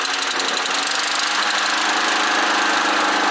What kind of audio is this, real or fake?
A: real